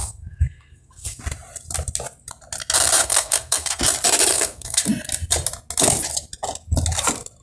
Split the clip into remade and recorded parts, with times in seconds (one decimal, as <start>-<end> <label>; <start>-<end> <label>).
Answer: 0.0-1.2 remade; 1.2-3.0 recorded; 3.0-3.8 remade; 3.8-4.3 recorded; 4.3-4.8 remade; 4.8-7.4 recorded